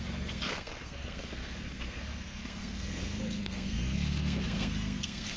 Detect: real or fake fake